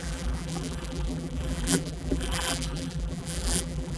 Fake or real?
fake